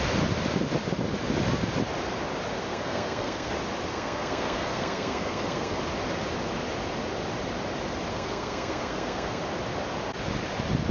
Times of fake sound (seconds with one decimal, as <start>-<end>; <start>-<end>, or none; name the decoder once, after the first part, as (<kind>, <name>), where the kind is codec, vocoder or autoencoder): 2.7-3.5 (codec, SNAC); 3.9-5.8; 8.1-9.4